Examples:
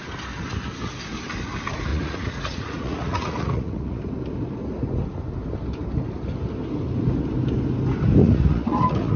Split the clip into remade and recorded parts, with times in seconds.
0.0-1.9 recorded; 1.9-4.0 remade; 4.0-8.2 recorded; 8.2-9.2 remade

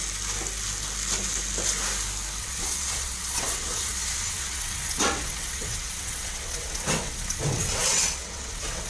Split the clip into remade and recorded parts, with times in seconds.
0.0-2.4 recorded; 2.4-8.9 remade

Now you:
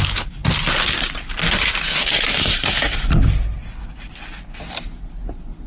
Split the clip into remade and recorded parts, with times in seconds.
0.0-3.6 recorded; 3.6-4.1 remade; 4.1-5.7 recorded